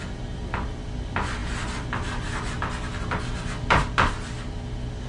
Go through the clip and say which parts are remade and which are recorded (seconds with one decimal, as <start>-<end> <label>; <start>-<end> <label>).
0.0-5.1 recorded